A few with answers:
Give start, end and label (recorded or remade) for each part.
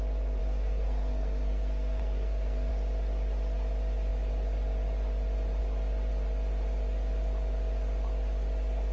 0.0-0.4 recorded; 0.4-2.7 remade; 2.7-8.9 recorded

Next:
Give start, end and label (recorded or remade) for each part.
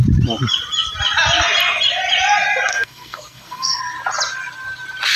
0.0-2.7 recorded; 2.7-3.8 remade; 3.8-5.2 recorded